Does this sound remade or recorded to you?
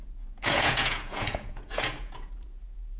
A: remade